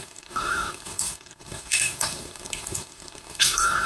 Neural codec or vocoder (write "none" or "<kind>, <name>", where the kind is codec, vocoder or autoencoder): codec, SNAC